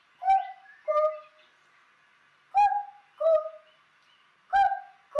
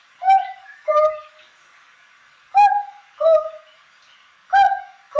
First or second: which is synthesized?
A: second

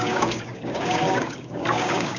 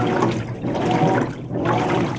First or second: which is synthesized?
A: first